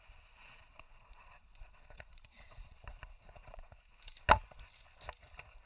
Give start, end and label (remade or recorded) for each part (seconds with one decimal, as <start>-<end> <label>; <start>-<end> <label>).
0.0-0.4 recorded; 0.4-3.8 remade; 3.8-5.7 recorded